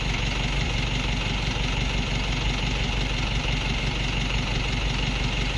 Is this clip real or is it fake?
real